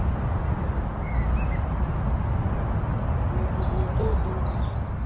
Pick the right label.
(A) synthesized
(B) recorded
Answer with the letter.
B